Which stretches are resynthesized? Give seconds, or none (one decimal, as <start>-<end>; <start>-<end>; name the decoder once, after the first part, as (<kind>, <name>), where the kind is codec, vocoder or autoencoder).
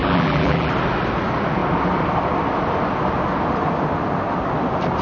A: 0.0-0.7 (vocoder, BigVGAN v2)